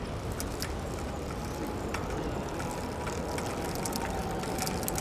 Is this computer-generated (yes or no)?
no